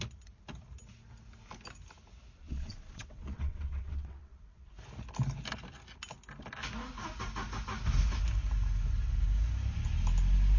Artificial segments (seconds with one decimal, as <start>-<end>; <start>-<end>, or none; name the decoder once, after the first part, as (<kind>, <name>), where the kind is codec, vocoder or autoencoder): 2.4-4.7 (vocoder, WaveNeXt)